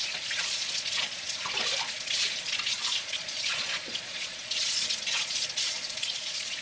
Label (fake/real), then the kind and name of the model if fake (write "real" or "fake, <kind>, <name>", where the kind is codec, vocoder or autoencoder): fake, vocoder, Vocos